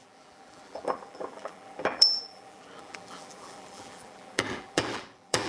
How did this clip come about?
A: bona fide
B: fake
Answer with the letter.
B